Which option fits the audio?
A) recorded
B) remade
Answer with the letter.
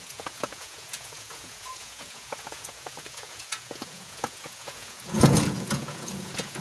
B